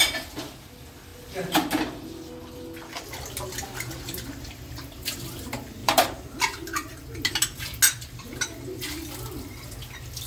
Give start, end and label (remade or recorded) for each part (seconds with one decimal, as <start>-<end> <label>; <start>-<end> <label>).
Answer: 0.0-5.8 recorded; 5.8-6.4 remade; 6.4-10.3 recorded